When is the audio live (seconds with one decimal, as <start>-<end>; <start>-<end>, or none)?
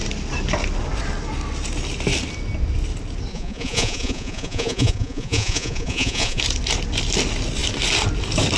0.0-3.3; 6.4-8.6